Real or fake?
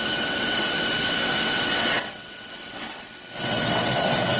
fake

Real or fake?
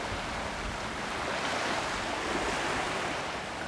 real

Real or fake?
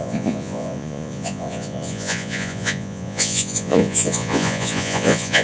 fake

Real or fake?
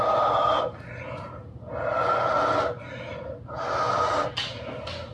real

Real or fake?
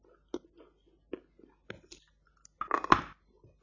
real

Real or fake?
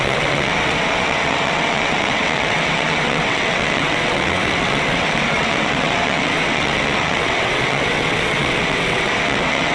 fake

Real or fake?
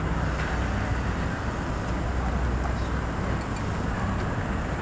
real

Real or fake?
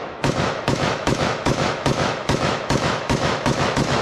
fake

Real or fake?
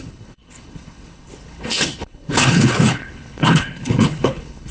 fake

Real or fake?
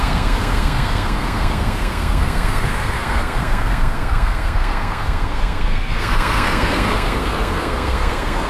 fake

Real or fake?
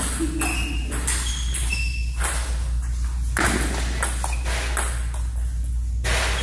real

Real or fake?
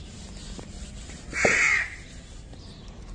real